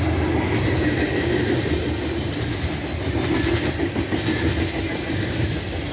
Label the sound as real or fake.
real